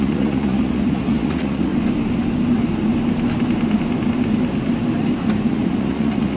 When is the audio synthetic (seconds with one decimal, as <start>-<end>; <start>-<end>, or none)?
0.0-1.7; 5.5-6.4